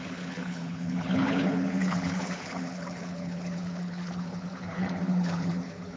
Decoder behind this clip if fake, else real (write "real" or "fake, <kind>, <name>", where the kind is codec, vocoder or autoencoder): fake, codec, HILCodec